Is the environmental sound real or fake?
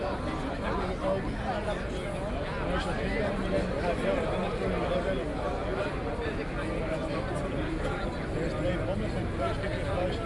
real